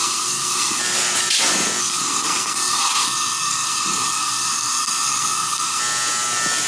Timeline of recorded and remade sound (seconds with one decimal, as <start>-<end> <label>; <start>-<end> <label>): 0.0-0.8 remade; 0.8-1.8 recorded; 1.8-5.8 remade; 5.8-6.7 recorded